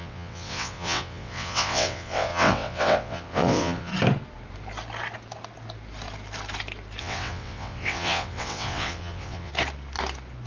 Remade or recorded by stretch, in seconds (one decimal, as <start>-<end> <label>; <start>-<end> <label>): 0.0-3.9 remade; 3.9-7.0 recorded; 7.0-9.5 remade; 9.5-10.5 recorded

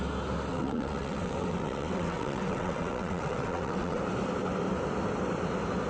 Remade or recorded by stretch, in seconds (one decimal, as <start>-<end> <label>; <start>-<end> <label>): 0.0-0.5 recorded; 0.5-4.0 remade; 4.0-5.9 recorded

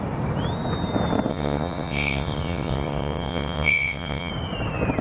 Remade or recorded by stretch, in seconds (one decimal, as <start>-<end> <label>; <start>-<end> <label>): 0.0-1.3 recorded; 1.3-4.3 remade; 4.3-5.0 recorded

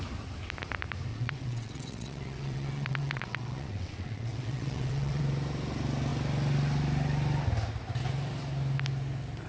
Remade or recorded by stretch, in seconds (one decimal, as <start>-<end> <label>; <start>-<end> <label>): 0.0-1.1 recorded; 1.1-5.2 remade; 5.2-9.5 recorded

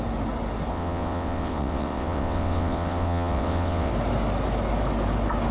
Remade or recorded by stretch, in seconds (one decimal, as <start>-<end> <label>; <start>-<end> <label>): 0.0-0.7 recorded; 0.7-3.9 remade; 3.9-5.5 recorded

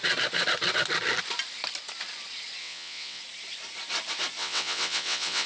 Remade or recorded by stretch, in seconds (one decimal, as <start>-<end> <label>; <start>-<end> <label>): 0.0-2.6 recorded; 2.6-3.2 remade; 3.2-4.4 recorded; 4.4-5.5 remade

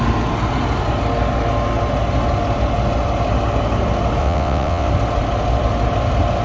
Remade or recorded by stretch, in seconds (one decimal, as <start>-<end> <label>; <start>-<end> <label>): 0.0-4.2 recorded; 4.2-4.9 remade; 4.9-6.4 recorded

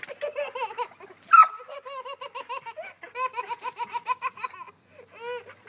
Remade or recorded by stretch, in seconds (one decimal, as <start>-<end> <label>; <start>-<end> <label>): 0.0-5.7 recorded